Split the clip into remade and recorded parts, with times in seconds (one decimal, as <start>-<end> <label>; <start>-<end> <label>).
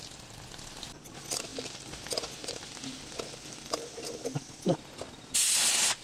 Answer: 0.0-6.0 recorded